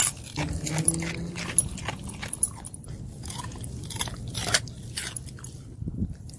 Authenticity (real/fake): real